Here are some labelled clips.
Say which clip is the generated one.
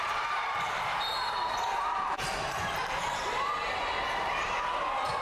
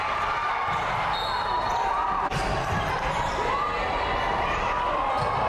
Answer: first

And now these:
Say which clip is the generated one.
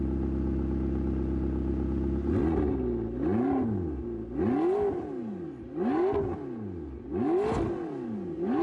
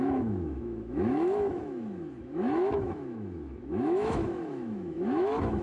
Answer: second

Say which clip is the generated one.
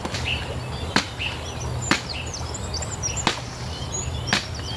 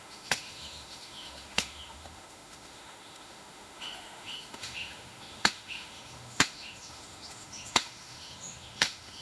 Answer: second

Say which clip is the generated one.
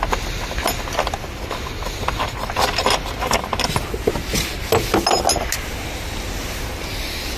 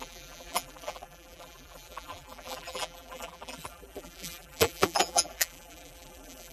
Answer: second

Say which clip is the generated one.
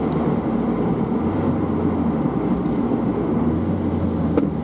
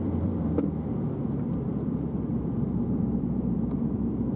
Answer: second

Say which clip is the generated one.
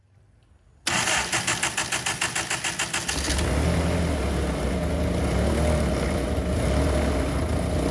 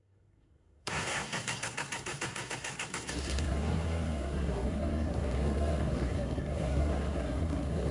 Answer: second